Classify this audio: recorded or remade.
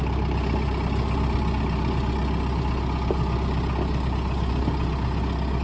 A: recorded